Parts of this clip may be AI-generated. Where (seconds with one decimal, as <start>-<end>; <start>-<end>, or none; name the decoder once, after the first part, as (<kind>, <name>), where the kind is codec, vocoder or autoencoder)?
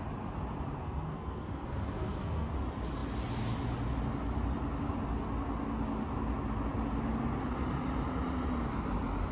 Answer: 0.8-2.5 (codec, SNAC)